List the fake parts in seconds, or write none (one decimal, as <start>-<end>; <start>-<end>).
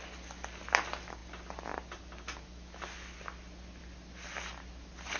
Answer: none